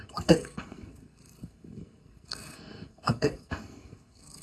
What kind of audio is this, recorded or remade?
remade